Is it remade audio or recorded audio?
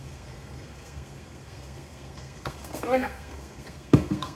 remade